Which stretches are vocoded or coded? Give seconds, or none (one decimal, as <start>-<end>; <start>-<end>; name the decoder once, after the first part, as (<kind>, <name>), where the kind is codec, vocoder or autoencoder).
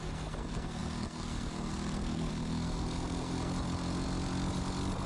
0.0-3.5 (codec, SNAC)